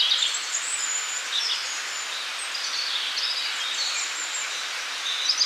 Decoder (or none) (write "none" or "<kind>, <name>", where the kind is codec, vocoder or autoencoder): none